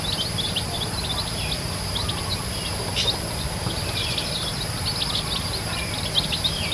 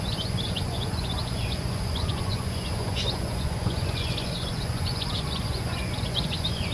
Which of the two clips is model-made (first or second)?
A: second